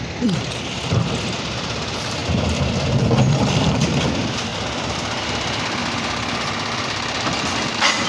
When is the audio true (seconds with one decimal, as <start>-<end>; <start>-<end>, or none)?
0.0-8.1